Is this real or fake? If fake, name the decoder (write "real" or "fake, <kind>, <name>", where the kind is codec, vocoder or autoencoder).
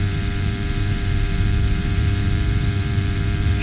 fake, vocoder, BigVGAN v2